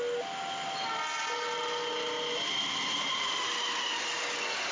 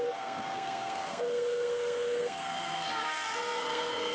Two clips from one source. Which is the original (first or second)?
first